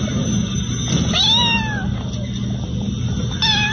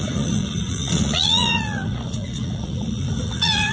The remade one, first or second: second